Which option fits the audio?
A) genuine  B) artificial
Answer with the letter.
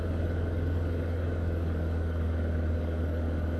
B